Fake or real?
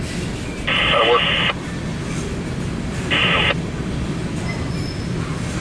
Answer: real